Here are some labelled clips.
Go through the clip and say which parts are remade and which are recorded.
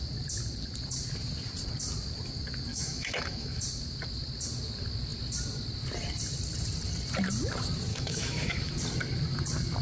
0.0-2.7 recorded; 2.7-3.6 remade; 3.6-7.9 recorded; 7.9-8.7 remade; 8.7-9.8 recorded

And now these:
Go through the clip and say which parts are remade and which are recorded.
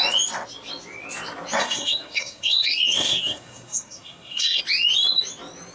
0.0-1.6 recorded; 1.6-4.6 remade; 4.6-5.7 recorded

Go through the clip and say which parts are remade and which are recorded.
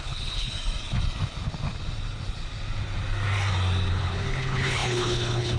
0.0-0.5 remade; 0.5-3.9 recorded; 3.9-5.6 remade